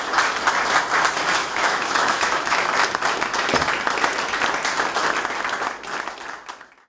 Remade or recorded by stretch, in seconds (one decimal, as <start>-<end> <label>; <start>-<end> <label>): 0.0-1.4 recorded; 1.4-2.7 remade; 2.7-6.9 recorded